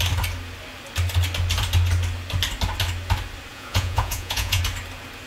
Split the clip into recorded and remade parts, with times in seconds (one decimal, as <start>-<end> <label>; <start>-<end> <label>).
0.0-3.5 recorded; 3.5-4.6 remade; 4.6-5.3 recorded